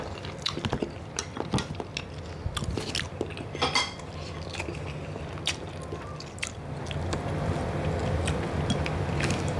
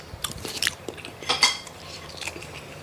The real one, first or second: first